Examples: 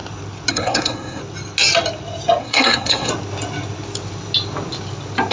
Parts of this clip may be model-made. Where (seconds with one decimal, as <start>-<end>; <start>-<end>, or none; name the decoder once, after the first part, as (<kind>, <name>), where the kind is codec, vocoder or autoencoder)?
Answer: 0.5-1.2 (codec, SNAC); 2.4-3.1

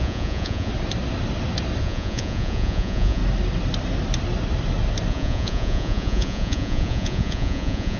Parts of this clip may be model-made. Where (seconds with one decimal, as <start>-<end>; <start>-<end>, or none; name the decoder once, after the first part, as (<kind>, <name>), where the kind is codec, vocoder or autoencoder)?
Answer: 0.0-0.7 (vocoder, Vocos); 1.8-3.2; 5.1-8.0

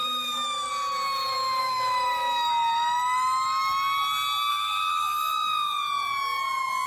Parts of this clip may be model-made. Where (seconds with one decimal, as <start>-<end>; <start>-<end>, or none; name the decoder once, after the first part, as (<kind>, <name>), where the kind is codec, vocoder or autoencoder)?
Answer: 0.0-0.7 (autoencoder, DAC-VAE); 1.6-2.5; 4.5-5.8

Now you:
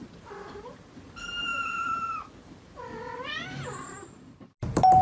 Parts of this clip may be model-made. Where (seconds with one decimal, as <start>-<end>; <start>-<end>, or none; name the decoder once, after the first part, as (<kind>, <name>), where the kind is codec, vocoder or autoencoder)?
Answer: none